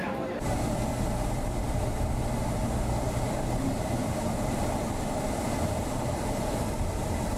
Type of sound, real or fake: fake